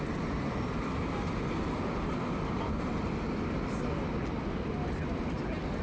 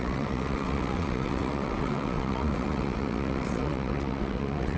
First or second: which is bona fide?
first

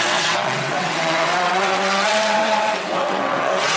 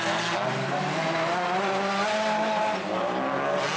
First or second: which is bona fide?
second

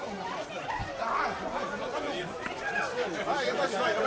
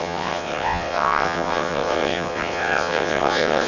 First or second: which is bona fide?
first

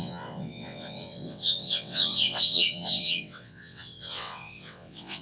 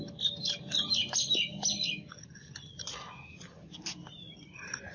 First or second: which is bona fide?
second